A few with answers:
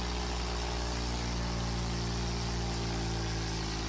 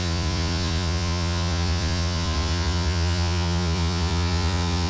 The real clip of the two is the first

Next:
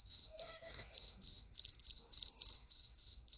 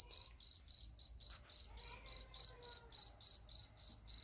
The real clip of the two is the second